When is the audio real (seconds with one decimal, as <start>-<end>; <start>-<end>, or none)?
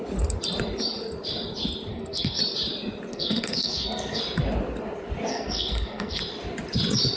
0.0-1.9; 2.4-3.1; 4.2-5.3; 6.2-7.2